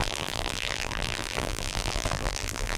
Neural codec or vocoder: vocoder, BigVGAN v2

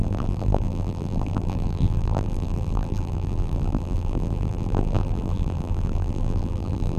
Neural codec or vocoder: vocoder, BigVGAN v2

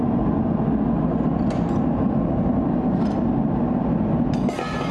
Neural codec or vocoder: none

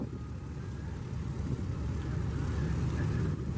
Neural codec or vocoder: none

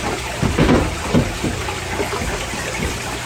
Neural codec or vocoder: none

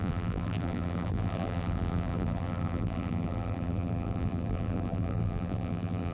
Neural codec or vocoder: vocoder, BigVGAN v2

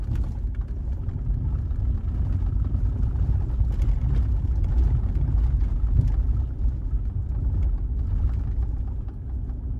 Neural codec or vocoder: none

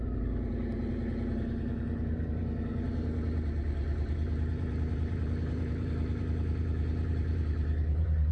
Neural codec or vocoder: vocoder, BigVGAN v2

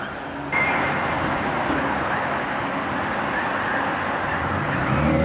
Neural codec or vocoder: none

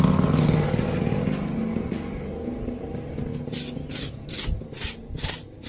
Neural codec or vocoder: none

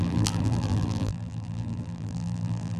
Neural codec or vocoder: vocoder, BigVGAN v2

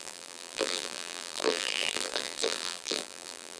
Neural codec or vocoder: vocoder, BigVGAN v2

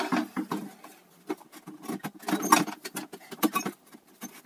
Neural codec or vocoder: none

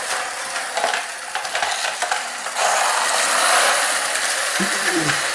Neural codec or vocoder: vocoder, BigVGAN v2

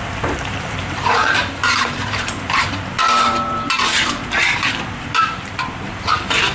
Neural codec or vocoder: vocoder, BigVGAN v2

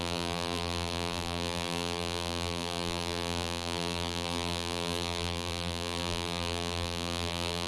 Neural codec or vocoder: vocoder, BigVGAN v2